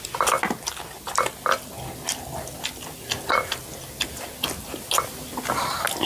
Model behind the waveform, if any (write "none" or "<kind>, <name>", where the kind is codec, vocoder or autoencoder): none